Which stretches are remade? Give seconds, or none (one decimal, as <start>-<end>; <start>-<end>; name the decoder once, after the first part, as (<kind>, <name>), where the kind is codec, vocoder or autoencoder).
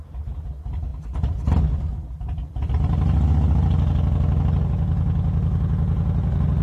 none